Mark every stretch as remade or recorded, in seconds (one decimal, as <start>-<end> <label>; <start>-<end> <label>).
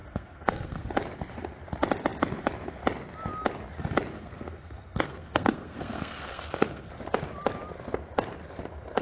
0.0-0.9 remade; 0.9-4.1 recorded; 4.1-6.9 remade; 6.9-9.0 recorded